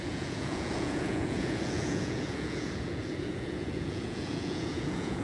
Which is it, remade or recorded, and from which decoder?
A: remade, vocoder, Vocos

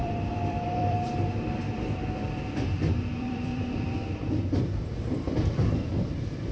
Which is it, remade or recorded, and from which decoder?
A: remade, vocoder, BigVGAN v2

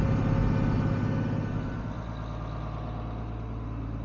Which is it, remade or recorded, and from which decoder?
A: recorded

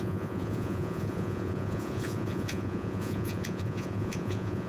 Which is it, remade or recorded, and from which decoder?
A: remade, vocoder, Vocos